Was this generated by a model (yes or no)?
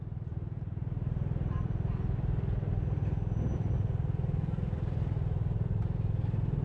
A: no